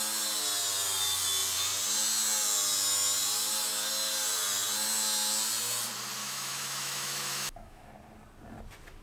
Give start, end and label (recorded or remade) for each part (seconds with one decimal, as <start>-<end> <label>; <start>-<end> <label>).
0.0-6.2 recorded; 6.2-7.9 remade; 7.9-9.0 recorded